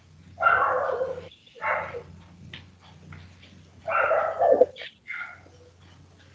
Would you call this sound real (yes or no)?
yes